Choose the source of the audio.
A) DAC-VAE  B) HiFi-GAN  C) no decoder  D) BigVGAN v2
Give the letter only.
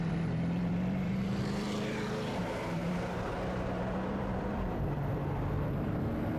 D